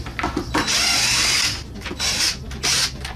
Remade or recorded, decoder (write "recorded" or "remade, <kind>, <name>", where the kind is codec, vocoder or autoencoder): recorded